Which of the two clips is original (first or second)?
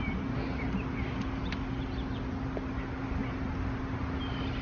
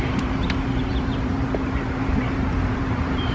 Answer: first